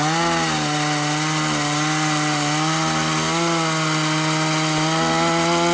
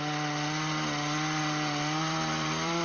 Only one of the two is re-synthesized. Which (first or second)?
second